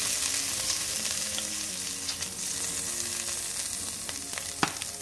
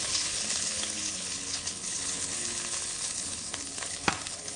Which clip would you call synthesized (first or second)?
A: second